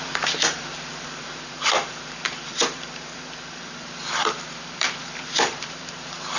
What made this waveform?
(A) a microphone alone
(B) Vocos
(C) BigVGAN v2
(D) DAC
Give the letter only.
C